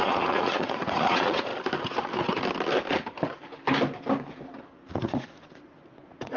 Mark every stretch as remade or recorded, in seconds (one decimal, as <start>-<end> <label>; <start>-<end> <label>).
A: 0.0-1.5 remade; 1.5-4.9 recorded; 4.9-6.4 remade